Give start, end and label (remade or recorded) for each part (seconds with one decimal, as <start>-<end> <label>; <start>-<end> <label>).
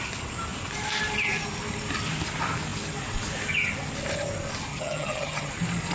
0.0-4.7 recorded; 4.7-5.5 remade; 5.5-5.9 recorded